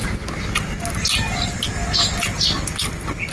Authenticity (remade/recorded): recorded